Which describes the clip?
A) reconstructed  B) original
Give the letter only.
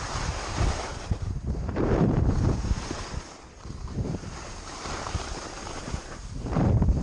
A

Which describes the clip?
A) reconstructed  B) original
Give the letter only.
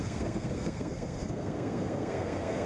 A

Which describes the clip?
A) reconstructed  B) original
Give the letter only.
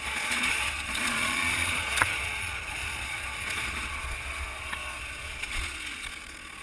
A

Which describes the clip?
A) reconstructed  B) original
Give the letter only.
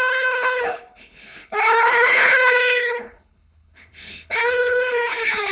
A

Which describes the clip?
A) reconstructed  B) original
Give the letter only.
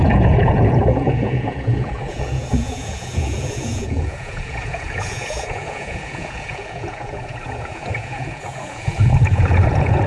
A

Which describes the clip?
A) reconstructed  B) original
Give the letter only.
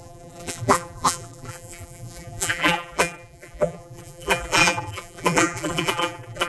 A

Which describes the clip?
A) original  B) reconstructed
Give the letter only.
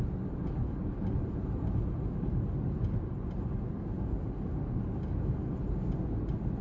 A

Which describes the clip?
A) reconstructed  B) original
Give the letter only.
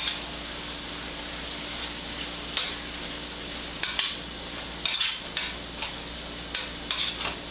B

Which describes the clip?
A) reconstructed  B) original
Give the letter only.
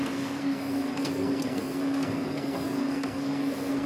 A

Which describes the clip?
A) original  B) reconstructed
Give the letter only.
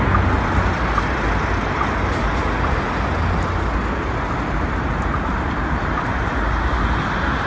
A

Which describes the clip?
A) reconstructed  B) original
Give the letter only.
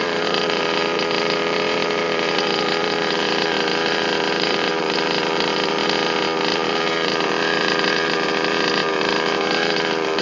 A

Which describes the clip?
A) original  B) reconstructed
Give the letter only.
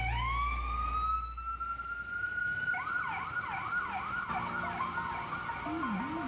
A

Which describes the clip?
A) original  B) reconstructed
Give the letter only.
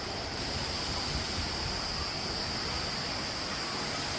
A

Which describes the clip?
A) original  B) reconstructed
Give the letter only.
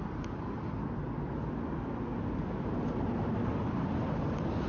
A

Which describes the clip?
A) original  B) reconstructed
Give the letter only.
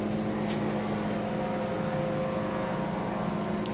A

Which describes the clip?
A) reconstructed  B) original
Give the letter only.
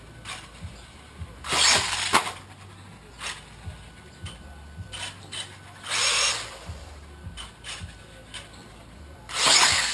B